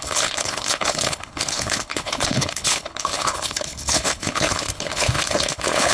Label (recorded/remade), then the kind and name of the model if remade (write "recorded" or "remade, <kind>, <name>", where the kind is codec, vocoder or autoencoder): remade, codec, HILCodec